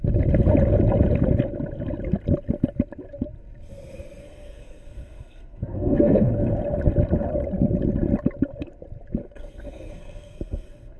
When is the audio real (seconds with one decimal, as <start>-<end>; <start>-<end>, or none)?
0.0-4.2; 6.3-9.2